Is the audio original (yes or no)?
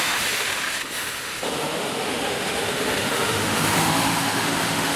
no